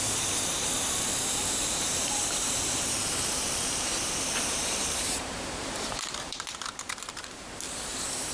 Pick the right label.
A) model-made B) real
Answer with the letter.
A